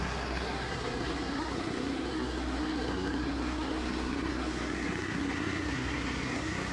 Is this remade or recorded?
remade